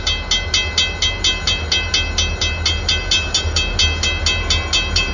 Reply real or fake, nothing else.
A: real